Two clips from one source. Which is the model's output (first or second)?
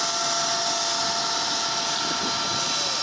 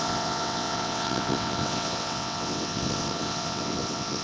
second